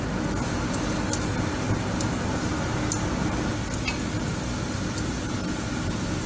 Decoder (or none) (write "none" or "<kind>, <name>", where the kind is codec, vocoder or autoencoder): none